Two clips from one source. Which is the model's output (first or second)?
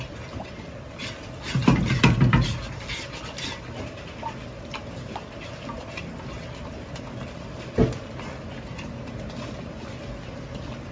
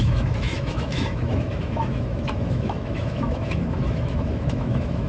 second